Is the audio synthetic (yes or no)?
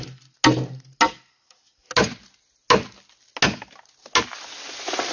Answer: no